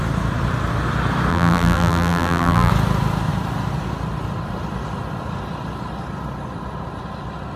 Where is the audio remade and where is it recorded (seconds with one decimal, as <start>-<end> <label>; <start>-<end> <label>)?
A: 0.0-1.3 recorded; 1.3-2.7 remade; 2.7-7.6 recorded